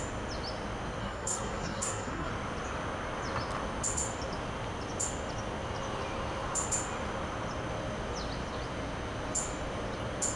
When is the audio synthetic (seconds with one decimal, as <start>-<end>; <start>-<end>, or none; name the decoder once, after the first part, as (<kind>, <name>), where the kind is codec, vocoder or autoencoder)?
1.0-2.3 (codec, SNAC)